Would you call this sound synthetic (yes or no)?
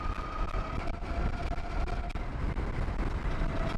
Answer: no